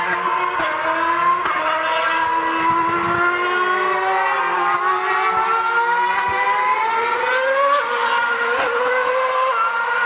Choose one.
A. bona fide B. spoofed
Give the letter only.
A